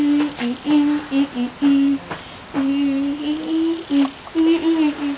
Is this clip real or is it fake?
real